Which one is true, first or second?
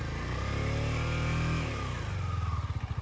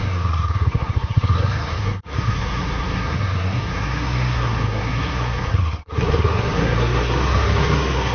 first